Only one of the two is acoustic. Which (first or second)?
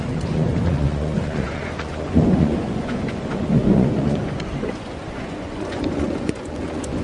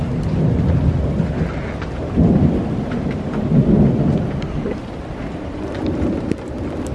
second